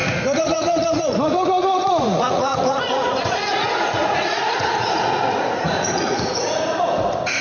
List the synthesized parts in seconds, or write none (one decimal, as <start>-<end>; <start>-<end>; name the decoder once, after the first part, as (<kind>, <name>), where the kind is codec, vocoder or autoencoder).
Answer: 0.0-7.4 (vocoder, Vocos)

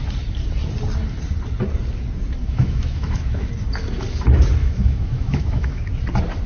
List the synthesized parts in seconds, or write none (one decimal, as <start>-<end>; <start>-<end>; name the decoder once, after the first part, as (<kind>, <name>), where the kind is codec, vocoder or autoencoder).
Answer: 2.4-3.5 (autoencoder, DAC-VAE); 4.6-5.9

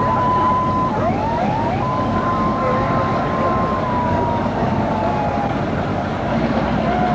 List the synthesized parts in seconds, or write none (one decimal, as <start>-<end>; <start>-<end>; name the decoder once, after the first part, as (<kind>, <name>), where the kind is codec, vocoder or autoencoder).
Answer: 0.9-5.2 (codec, DAC); 5.9-6.6

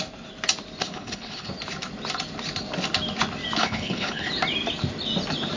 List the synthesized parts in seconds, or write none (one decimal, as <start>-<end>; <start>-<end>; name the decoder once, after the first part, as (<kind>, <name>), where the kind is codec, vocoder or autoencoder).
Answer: 0.8-1.5 (codec, HILCodec); 3.6-4.3

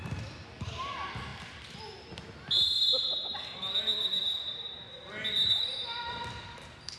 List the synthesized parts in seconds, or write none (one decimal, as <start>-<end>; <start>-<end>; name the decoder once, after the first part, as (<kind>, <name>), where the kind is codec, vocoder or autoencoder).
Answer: none

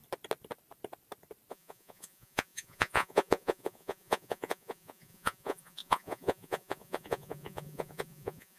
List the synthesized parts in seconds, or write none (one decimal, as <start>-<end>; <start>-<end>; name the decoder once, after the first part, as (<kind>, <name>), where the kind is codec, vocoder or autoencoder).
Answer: 1.5-8.6 (vocoder, Vocos)

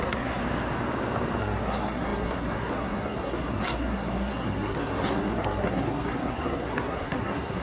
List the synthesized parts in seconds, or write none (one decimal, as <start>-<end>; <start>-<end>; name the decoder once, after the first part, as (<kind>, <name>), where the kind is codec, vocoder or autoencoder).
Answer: 0.0-0.4 (codec, SNAC); 1.4-7.6

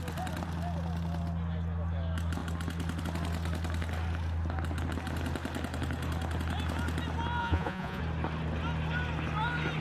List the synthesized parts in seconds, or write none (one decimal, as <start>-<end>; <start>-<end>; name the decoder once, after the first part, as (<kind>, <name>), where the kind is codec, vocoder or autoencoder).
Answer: 7.4-8.0 (vocoder, Vocos)